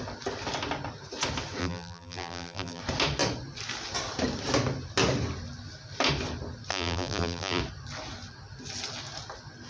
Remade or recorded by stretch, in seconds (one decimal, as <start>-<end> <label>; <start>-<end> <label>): 0.0-1.6 recorded; 1.6-2.8 remade; 2.8-6.7 recorded; 6.7-7.6 remade; 7.6-9.7 recorded